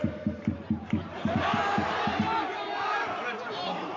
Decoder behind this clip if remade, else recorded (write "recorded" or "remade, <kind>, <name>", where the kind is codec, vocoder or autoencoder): remade, vocoder, BigVGAN v2